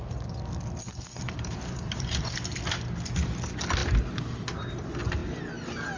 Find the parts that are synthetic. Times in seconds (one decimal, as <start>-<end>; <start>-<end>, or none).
0.9-2.2